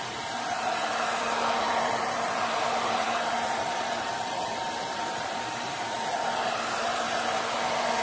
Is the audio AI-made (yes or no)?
yes